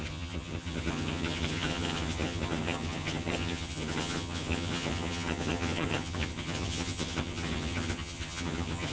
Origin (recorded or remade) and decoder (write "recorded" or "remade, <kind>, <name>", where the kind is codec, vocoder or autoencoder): remade, vocoder, HiFi-GAN